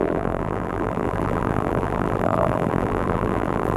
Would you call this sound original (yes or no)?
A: no